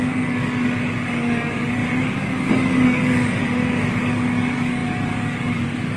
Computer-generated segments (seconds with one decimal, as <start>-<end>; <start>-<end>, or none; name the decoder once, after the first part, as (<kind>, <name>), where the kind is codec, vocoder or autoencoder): 0.0-6.0 (codec, DAC)